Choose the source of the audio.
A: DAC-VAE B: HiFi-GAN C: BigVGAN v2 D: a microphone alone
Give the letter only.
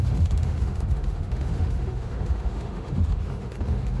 A